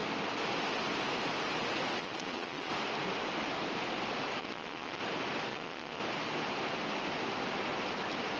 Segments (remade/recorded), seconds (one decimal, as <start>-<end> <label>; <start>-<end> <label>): 0.0-2.0 recorded; 2.0-2.7 remade; 2.7-4.4 recorded; 4.4-5.0 remade; 5.0-5.5 recorded; 5.5-6.0 remade; 6.0-8.4 recorded